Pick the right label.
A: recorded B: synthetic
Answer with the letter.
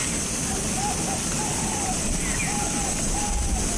A